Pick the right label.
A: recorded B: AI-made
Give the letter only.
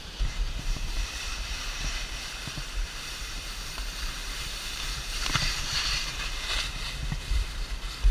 B